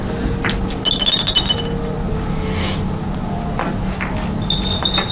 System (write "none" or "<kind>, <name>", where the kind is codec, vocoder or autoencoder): none